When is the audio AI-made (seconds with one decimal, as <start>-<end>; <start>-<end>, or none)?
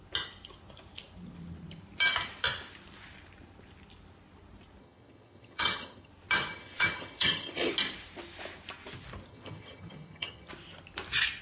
4.8-6.1; 6.5-7.7; 9.3-10.5